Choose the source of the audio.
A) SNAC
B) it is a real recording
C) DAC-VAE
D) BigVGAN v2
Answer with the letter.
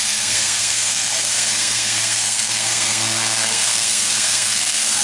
A